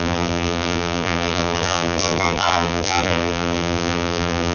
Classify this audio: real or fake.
fake